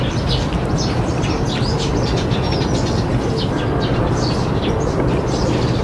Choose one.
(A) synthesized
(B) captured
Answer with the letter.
B